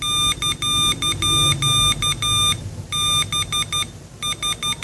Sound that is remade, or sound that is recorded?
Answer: recorded